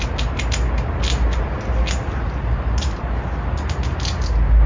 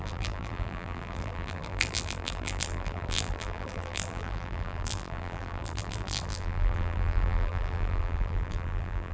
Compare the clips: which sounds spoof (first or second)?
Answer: second